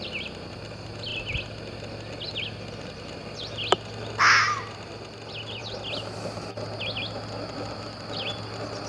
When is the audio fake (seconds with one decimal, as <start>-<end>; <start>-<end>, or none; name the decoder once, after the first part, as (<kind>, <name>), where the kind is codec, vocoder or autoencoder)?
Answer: none

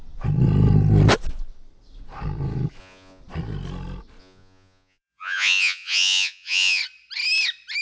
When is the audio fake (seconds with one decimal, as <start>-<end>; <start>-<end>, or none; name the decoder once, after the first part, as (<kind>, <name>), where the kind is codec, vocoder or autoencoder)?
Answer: 2.8-3.2 (vocoder, Vocos); 4.2-6.8

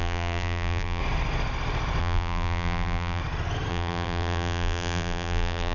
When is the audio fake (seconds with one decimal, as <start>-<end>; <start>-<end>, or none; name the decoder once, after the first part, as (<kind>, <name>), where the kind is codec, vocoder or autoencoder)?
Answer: 0.0-1.0 (vocoder, BigVGAN v2); 2.0-3.2; 3.7-5.7

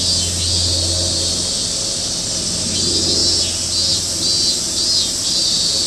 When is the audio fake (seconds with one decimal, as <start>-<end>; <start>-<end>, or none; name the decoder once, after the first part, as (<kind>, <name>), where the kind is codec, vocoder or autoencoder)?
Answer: none

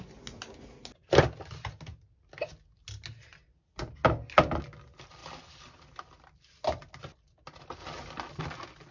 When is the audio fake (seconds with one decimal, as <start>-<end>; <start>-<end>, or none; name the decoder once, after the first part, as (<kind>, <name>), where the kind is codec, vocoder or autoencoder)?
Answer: none

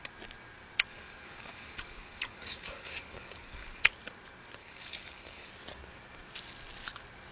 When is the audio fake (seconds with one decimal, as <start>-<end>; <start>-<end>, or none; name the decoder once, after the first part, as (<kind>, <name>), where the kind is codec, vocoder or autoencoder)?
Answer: 0.9-3.9 (codec, DAC); 4.6-5.5

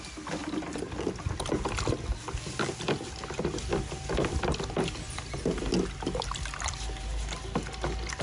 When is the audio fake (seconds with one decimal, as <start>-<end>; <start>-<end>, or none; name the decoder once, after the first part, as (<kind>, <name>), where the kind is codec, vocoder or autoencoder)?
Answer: 0.4-1.0 (vocoder, BigVGAN v2)